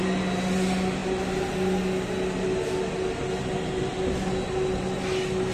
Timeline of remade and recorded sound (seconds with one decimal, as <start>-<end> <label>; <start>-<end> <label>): 0.0-5.5 recorded